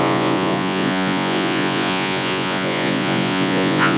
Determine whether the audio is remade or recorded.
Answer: remade